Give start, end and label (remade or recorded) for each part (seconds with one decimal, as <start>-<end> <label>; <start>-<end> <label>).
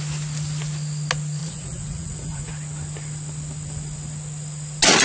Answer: 0.0-1.4 recorded; 1.4-2.5 remade; 2.5-5.0 recorded